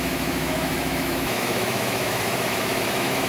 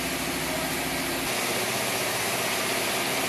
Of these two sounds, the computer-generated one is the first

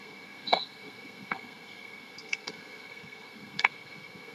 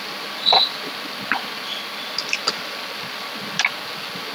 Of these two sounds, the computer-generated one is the first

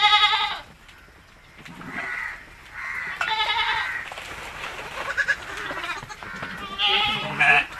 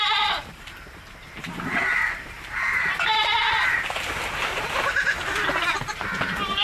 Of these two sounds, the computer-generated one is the second